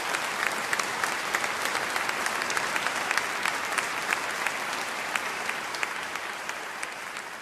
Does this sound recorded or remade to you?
recorded